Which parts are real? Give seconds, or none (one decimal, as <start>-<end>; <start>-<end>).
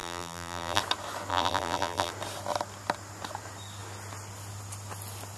0.8-1.3; 2.1-5.4